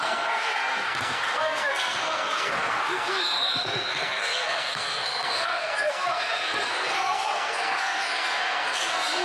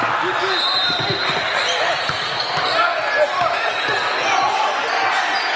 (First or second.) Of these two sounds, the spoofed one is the first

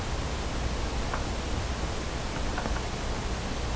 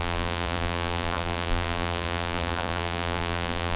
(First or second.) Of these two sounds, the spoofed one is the second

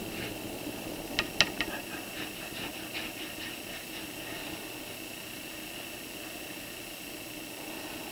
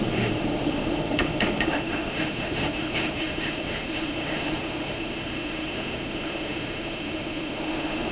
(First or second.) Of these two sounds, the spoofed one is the second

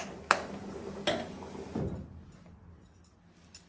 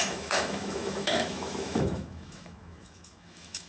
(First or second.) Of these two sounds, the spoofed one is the second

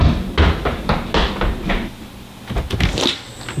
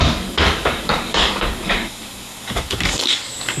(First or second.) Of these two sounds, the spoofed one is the second